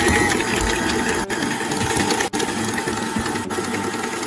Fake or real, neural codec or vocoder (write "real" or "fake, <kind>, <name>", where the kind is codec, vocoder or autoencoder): real